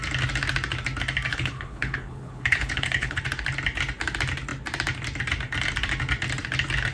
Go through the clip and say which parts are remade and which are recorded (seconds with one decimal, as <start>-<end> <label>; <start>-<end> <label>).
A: 0.0-1.3 recorded; 1.3-3.2 remade; 3.2-6.9 recorded